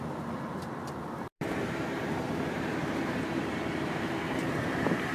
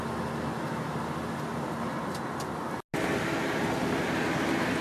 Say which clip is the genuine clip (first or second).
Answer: second